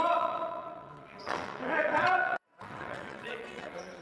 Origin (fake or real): fake